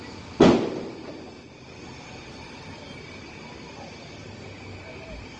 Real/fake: real